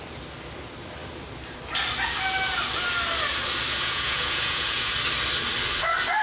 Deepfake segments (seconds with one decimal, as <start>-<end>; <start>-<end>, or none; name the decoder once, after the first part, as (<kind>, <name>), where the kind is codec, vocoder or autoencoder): 3.7-4.9 (vocoder, Vocos)